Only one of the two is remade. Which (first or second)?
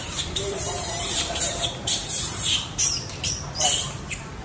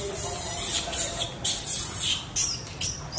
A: first